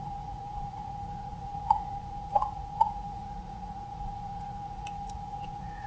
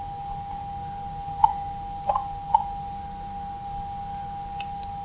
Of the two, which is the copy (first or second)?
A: first